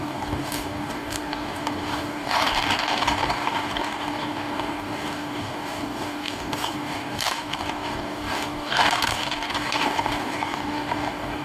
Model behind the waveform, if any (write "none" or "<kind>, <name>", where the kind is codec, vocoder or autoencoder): codec, DAC